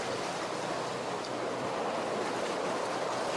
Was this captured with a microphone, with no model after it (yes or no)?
yes